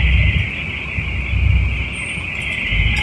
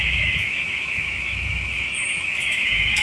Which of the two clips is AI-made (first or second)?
second